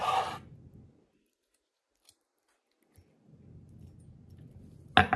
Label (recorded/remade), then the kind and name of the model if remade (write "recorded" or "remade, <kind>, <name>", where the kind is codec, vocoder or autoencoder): recorded